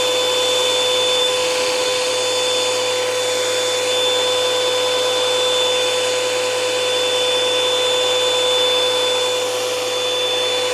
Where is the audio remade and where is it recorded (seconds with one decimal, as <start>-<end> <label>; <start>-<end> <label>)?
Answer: 0.0-1.2 recorded; 1.2-2.1 remade; 2.1-10.7 recorded